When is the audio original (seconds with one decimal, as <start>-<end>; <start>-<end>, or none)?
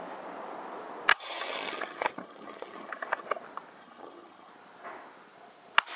0.0-1.1; 3.4-3.8; 4.5-6.0